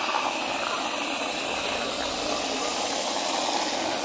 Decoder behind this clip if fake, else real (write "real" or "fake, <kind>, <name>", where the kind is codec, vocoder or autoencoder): real